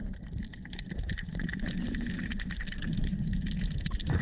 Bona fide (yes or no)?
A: no